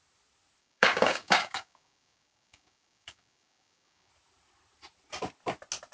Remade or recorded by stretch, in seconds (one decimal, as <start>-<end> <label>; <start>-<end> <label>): 0.0-0.6 recorded; 0.6-4.1 remade; 4.1-5.9 recorded